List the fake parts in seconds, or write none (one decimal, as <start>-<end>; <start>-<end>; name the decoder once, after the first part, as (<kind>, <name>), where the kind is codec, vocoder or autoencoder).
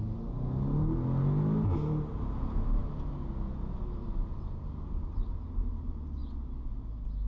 none